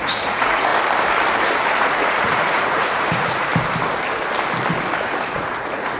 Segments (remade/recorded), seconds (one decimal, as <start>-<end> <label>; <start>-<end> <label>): 0.0-0.7 remade; 0.7-1.8 recorded; 1.8-3.5 remade; 3.5-5.0 recorded; 5.0-6.0 remade